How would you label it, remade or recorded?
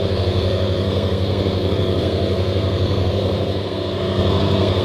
remade